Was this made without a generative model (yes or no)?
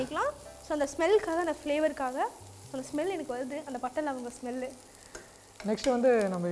yes